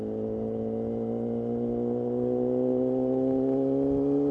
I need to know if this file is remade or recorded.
recorded